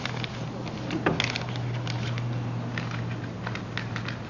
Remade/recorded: recorded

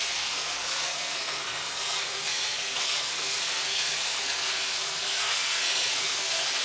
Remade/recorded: remade